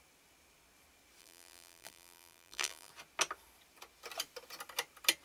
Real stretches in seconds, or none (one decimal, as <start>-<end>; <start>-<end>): 0.0-1.2; 2.9-5.2